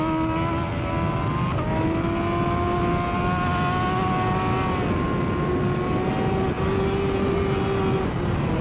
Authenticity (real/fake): real